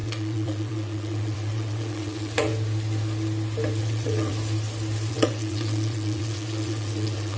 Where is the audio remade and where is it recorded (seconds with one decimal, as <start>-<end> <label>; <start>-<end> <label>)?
0.0-2.5 remade; 2.5-3.8 recorded; 3.8-4.3 remade; 4.3-5.1 recorded; 5.1-7.4 remade